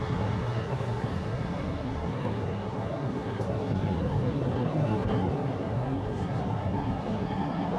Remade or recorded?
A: remade